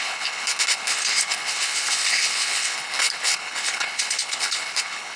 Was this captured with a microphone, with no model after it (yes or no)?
no